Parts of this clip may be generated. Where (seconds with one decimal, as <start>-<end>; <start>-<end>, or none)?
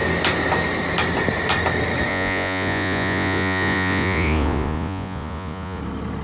2.1-5.8